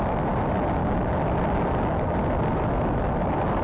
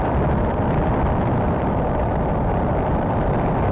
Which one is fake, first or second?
second